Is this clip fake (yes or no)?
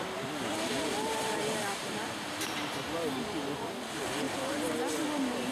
no